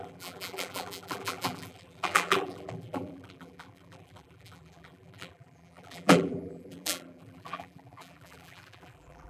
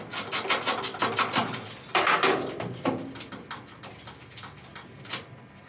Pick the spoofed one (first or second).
first